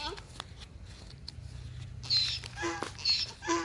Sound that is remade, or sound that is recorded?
recorded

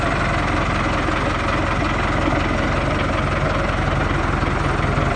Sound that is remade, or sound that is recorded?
recorded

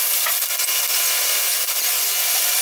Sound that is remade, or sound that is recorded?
recorded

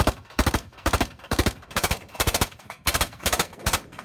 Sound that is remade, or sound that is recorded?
remade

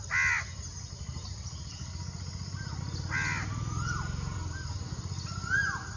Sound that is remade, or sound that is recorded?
recorded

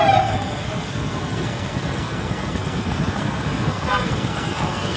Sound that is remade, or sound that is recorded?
remade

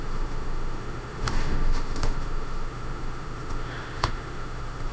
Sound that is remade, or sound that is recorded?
remade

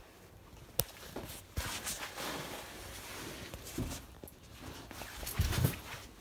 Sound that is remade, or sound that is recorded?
recorded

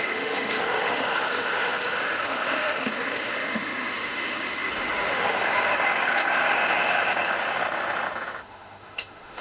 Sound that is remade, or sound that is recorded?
remade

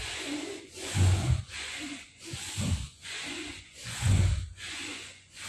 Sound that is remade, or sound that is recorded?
remade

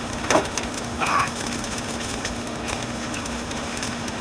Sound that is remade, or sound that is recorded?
remade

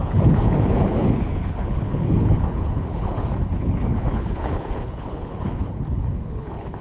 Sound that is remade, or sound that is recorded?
remade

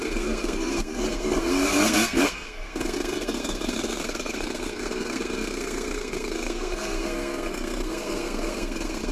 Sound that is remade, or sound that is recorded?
remade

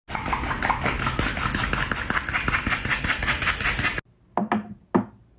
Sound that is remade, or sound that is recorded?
recorded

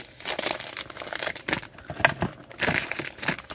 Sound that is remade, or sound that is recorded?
recorded